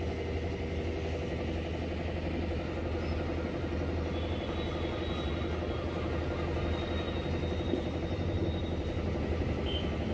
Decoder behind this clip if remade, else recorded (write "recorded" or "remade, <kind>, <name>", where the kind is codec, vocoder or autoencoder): recorded